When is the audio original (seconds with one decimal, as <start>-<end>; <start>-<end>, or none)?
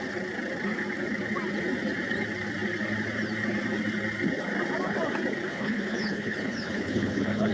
0.0-5.5